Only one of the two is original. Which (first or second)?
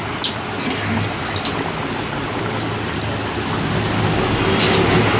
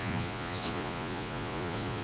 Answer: first